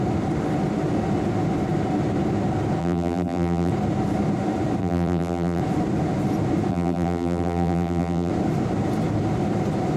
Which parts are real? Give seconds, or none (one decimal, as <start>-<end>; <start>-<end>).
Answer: 0.0-2.8; 3.7-4.8; 5.6-6.7; 8.3-10.0